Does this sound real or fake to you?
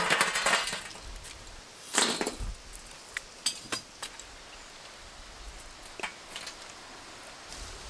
real